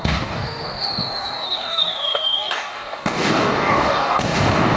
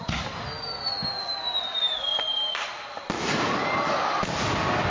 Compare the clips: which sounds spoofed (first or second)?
first